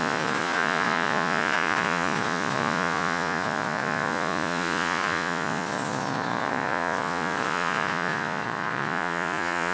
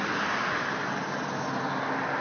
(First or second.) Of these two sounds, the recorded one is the second